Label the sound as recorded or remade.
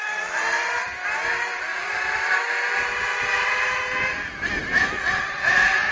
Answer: recorded